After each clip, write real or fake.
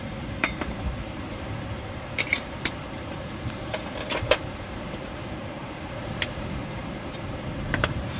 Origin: fake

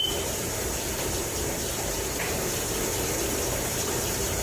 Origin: fake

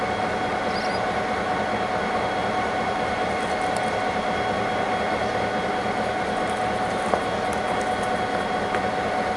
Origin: real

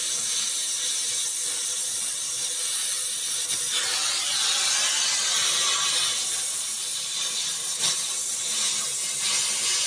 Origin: real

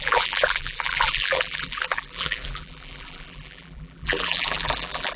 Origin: fake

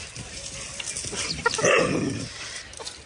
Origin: real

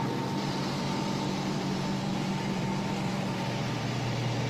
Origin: fake